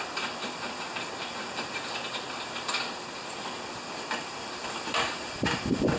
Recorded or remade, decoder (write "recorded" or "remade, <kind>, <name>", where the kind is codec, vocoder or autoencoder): remade, vocoder, BigVGAN v2